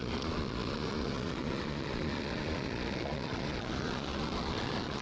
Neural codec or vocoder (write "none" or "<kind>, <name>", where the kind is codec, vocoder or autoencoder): vocoder, Vocos